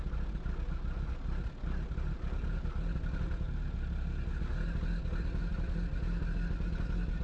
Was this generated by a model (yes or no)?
no